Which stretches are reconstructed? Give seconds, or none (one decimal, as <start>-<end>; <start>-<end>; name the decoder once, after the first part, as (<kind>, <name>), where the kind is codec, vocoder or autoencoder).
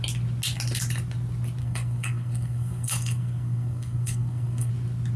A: 1.6-4.7 (codec, SNAC)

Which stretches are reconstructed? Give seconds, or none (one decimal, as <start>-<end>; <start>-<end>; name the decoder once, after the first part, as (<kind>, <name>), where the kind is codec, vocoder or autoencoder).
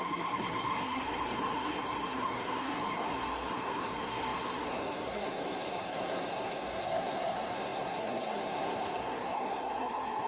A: 0.0-10.3 (codec, SNAC)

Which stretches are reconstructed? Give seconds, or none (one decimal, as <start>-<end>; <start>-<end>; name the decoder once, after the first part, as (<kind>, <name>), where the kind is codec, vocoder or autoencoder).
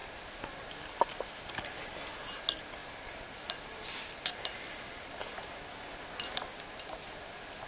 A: none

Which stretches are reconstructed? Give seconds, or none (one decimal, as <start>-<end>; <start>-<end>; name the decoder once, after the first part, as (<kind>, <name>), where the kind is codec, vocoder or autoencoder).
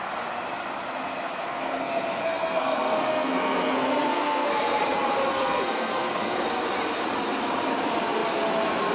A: 1.4-4.8 (codec, SNAC); 5.3-6.7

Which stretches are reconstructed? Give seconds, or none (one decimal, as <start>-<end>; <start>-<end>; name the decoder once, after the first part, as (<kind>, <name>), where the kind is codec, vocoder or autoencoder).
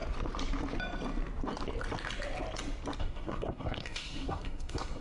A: 3.0-5.0 (codec, SNAC)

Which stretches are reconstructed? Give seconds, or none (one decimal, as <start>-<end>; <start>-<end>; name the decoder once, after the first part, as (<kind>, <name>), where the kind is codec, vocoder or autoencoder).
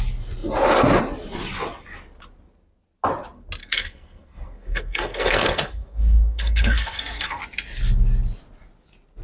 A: 3.6-7.4 (codec, SNAC)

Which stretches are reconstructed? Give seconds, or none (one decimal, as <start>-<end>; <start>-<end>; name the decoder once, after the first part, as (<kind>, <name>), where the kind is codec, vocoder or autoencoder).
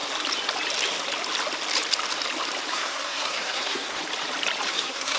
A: 2.7-4.0 (codec, SNAC); 4.7-5.2